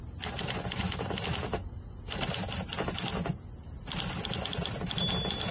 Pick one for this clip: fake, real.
real